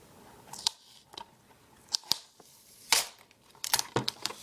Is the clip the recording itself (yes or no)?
no